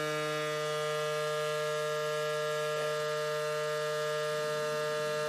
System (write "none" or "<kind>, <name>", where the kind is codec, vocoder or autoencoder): none